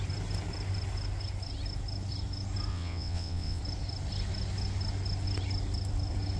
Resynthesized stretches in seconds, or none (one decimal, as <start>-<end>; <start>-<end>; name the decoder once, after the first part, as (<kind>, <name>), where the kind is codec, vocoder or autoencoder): 2.7-3.6 (vocoder, WaveNeXt)